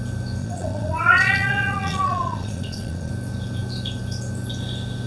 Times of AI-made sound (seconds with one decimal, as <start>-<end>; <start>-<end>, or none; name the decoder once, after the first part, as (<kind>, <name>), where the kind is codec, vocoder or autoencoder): 0.4-3.1 (vocoder, Vocos)